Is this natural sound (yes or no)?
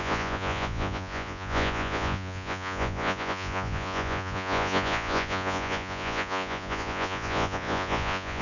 no